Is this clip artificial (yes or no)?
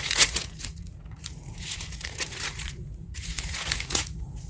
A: yes